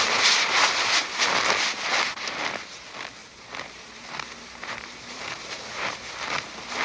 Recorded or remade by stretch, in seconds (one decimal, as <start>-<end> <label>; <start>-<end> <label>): 0.0-3.2 recorded; 3.2-6.1 remade; 6.1-6.8 recorded